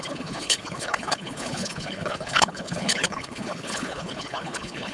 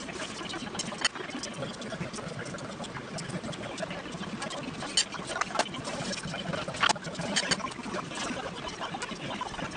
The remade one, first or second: first